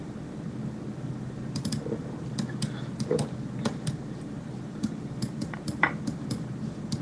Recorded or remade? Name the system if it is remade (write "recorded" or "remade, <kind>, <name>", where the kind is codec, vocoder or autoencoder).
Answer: recorded